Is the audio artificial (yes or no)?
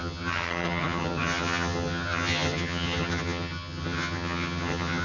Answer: yes